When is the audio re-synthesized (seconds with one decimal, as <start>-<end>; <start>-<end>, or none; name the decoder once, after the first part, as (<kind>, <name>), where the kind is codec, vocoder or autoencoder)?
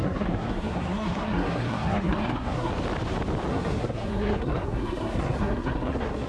0.0-2.7 (codec, SNAC); 3.5-6.3